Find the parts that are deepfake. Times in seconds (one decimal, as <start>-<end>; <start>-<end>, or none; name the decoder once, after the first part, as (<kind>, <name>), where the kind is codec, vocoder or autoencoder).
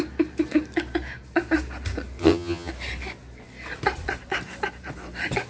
2.2-2.7 (vocoder, HiFi-GAN)